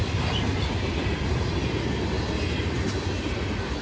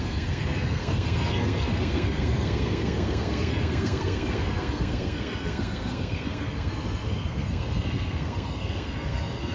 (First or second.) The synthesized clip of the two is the second